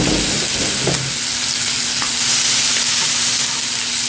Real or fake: real